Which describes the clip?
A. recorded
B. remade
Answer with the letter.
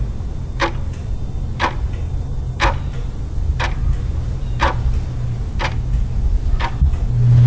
A